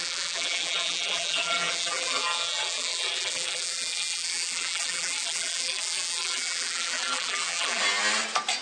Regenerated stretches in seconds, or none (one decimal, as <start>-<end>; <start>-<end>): 0.0-7.8